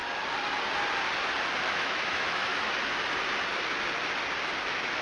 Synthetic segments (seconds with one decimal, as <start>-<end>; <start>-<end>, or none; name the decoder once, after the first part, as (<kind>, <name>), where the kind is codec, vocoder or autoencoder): 1.7-2.8 (autoencoder, DAC-VAE); 4.6-5.0